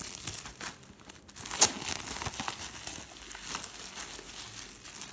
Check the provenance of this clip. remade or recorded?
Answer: recorded